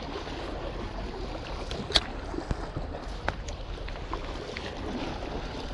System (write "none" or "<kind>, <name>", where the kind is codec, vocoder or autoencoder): none